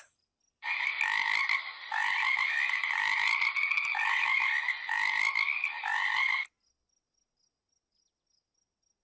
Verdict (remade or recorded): recorded